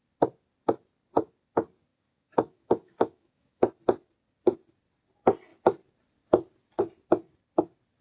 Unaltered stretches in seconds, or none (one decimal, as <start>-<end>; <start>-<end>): 0.0-1.9; 3.7-8.0